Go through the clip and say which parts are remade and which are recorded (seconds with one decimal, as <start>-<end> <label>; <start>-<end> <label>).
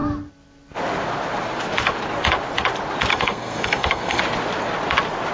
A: 0.0-3.1 recorded; 3.1-4.2 remade; 4.2-5.3 recorded